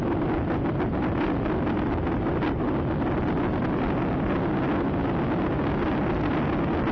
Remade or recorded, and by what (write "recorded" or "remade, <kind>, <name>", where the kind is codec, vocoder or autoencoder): recorded